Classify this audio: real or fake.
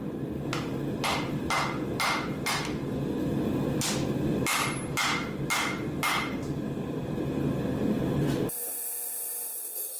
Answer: real